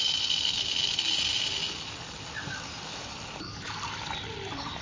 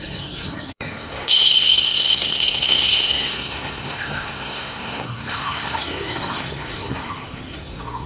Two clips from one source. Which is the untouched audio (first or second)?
first